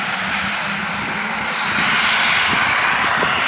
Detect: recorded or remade recorded